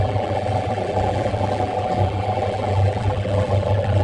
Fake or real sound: fake